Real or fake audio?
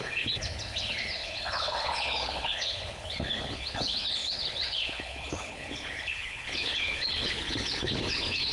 fake